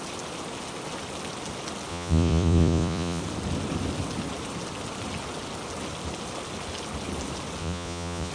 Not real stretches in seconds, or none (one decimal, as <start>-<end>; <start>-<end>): 1.9-3.2; 7.6-8.3